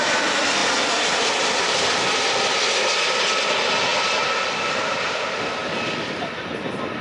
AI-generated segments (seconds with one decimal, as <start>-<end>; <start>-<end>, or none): none